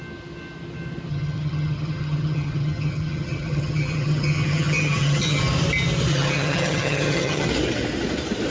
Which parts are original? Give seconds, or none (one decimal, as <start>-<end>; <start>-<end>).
0.0-1.1; 5.4-6.1; 7.5-8.5